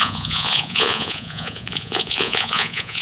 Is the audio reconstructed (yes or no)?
yes